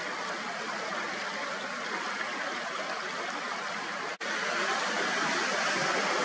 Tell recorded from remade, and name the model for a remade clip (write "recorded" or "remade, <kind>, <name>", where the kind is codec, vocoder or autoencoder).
recorded